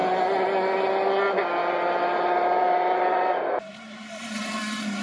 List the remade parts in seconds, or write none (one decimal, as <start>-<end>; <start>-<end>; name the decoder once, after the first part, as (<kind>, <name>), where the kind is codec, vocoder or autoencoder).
1.6-4.6 (vocoder, BigVGAN v2)